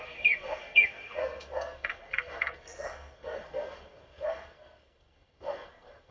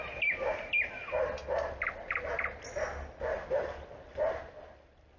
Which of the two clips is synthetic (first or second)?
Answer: first